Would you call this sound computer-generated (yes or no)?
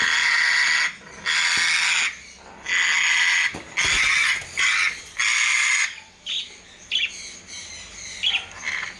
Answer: no